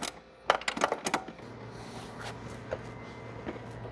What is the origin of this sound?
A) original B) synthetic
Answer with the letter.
A